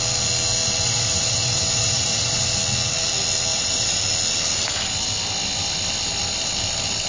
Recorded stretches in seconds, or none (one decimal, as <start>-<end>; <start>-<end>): 0.0-0.8; 2.4-3.5; 4.0-7.1